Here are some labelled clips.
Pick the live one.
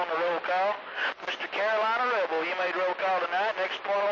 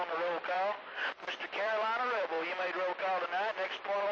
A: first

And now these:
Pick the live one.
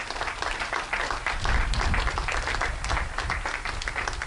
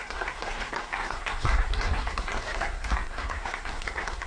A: first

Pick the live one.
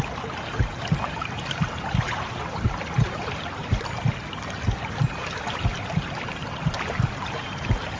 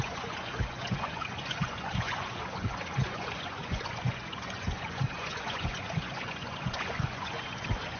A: first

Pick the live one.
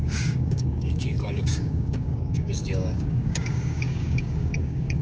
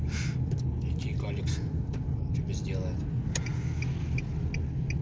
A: second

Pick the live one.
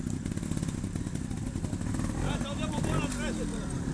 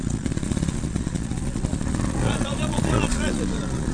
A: first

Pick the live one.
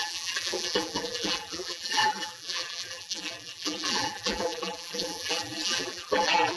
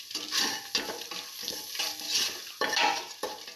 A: second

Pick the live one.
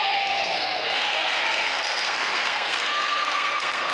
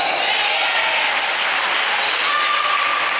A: second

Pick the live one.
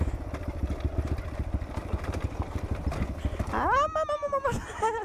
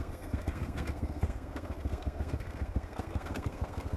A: first